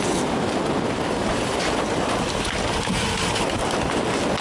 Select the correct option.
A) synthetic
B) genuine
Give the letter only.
B